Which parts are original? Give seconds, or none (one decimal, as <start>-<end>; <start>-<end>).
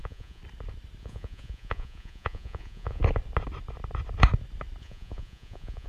0.4-1.0; 3.0-4.8